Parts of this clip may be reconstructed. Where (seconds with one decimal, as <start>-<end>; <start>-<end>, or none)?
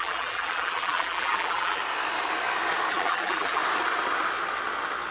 0.0-1.8; 2.9-3.6